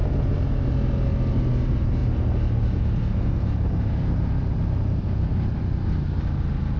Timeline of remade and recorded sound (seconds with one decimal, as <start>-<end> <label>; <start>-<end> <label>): 0.0-6.8 recorded